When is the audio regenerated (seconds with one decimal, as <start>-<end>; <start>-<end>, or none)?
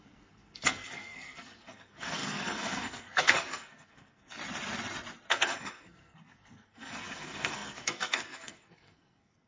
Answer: 0.0-4.4; 5.3-9.5